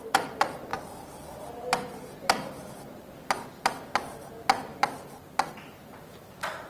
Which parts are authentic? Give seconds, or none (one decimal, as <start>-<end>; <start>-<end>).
0.0-6.7